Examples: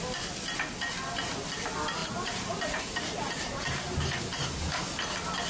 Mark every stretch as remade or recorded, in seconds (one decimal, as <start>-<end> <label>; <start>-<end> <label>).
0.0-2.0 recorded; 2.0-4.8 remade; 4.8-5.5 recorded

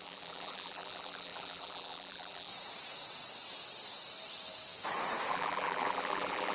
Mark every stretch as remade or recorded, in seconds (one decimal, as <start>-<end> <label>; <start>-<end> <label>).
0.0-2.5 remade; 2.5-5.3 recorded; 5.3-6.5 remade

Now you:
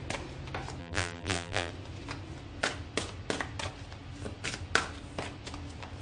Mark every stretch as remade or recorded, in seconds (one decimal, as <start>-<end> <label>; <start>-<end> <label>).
0.0-0.8 recorded; 0.8-1.7 remade; 1.7-6.0 recorded